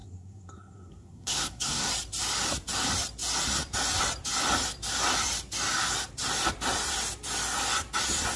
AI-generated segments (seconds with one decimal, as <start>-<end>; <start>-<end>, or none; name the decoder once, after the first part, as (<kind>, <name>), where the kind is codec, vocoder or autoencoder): 0.0-1.9 (codec, SNAC)